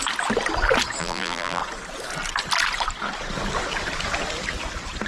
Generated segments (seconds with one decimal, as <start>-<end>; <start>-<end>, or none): 1.0-1.6